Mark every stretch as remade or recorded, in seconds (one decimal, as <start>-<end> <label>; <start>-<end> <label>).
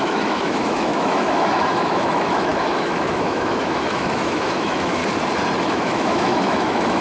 0.0-5.0 remade; 5.0-5.6 recorded; 5.6-7.0 remade